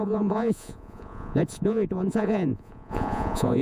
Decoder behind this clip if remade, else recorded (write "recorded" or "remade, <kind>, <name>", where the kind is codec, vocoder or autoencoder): remade, vocoder, Vocos